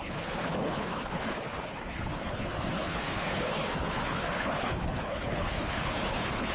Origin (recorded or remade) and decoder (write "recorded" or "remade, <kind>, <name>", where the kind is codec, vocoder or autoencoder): remade, codec, HILCodec